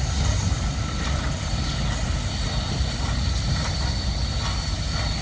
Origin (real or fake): real